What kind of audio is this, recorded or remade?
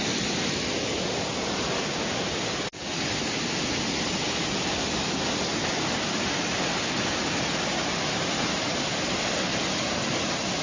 recorded